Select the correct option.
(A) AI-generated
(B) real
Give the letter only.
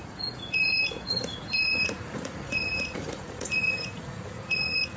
A